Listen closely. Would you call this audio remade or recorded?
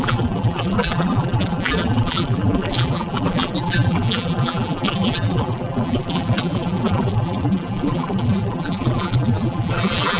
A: remade